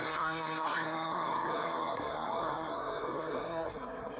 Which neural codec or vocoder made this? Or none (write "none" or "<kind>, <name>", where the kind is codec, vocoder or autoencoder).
codec, SNAC